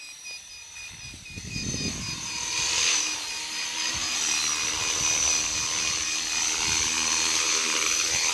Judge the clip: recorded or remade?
recorded